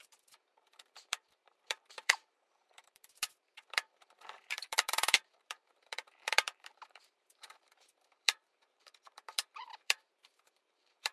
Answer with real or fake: fake